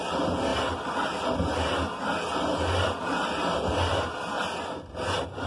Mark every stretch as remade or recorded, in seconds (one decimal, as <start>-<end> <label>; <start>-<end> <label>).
0.0-5.5 recorded

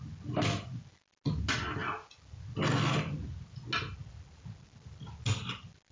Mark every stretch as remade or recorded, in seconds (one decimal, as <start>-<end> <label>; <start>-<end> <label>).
0.0-5.9 recorded